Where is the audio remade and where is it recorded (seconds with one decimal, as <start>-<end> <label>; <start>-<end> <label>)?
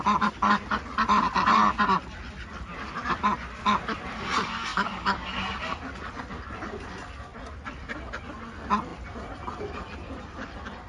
0.0-4.7 recorded; 4.7-5.3 remade; 5.3-10.9 recorded